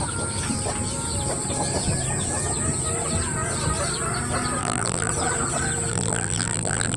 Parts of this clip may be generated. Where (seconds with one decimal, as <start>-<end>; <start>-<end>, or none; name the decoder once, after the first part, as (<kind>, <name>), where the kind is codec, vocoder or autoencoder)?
4.6-5.1 (vocoder, BigVGAN v2); 5.9-7.0